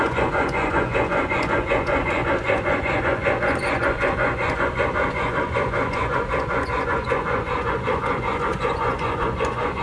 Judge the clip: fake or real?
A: fake